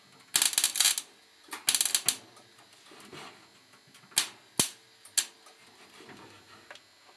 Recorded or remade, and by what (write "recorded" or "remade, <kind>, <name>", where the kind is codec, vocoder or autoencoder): recorded